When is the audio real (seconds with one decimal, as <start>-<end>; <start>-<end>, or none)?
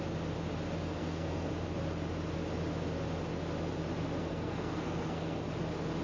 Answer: 0.0-1.0; 1.5-4.2; 5.5-6.0